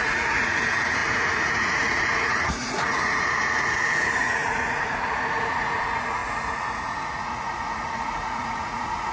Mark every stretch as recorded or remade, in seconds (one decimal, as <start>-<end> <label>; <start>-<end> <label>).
0.0-9.1 remade